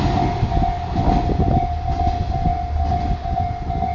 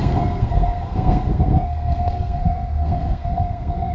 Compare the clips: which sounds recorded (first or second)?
first